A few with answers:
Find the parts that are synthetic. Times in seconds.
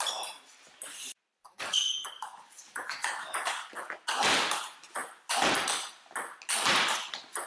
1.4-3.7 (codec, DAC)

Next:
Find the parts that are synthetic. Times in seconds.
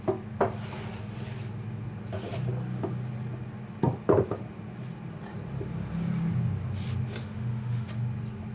7.2-7.9 (autoencoder, DAC-VAE)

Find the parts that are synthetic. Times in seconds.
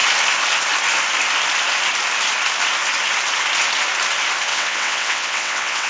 4.5-5.9 (vocoder, WaveNeXt)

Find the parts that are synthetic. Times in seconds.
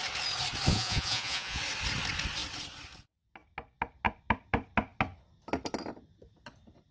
0.7-1.6 (vocoder, Vocos)